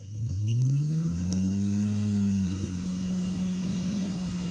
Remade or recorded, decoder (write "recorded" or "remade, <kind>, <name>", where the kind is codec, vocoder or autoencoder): remade, codec, SNAC